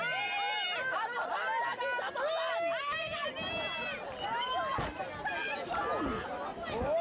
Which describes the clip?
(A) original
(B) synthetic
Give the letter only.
A